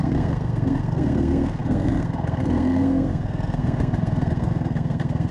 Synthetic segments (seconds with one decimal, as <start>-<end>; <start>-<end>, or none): 0.0-5.3